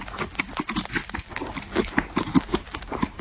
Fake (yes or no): no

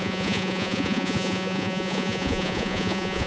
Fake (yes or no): yes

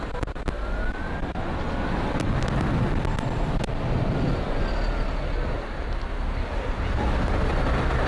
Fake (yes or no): no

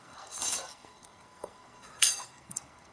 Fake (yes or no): yes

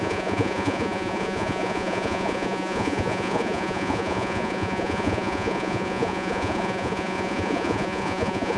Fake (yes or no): yes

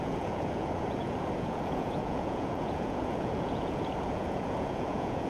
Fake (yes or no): yes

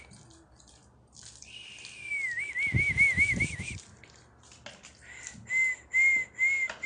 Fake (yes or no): no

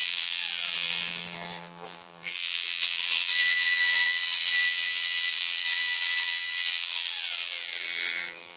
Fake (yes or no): yes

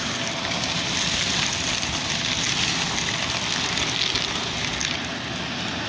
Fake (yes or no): no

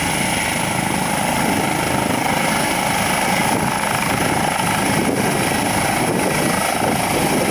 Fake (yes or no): no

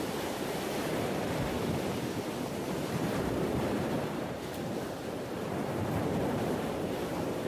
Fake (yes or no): yes